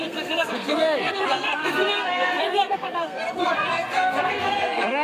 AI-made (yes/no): yes